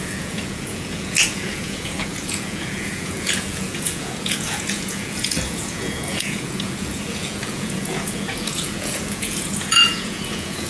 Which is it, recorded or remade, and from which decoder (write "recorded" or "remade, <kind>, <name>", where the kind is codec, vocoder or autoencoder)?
remade, vocoder, Vocos